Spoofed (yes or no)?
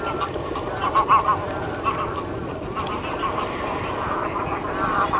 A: no